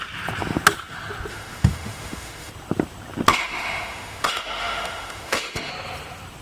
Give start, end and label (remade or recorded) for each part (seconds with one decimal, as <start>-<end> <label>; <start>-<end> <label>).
0.0-1.3 recorded; 1.3-2.5 remade; 2.5-3.3 recorded; 3.3-5.7 remade; 5.7-6.4 recorded